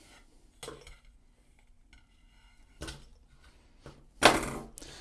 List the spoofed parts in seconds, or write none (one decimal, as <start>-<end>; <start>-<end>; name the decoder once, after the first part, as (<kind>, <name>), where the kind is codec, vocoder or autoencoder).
none